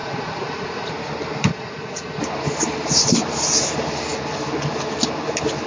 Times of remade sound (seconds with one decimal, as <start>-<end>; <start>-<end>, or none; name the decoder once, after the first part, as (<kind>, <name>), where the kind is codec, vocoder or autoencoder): 0.0-0.9 (vocoder, Vocos); 1.5-2.2

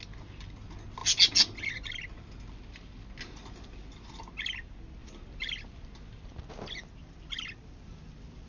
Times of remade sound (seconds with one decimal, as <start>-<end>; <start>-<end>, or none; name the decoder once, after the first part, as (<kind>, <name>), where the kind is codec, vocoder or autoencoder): none

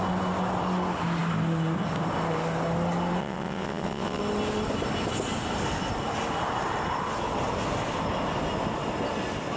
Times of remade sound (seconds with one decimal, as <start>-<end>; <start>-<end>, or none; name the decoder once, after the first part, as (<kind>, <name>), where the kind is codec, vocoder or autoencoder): 3.2-4.2 (vocoder, WaveNeXt)